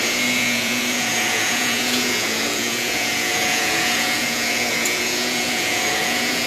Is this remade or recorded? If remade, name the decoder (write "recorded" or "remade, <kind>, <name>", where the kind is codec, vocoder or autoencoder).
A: remade, vocoder, Vocos